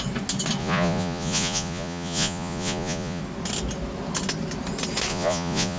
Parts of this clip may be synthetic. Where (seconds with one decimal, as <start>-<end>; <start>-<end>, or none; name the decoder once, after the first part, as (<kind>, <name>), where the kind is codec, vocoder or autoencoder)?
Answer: 0.6-3.2 (vocoder, Vocos); 5.1-5.8